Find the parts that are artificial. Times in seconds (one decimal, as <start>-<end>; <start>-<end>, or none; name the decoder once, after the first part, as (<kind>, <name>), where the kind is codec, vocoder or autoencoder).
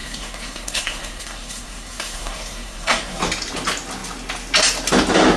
0.0-3.2 (codec, SNAC)